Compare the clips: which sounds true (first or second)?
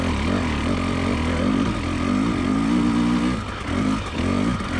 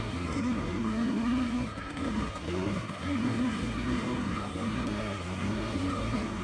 first